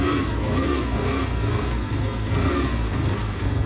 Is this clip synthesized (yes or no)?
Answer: yes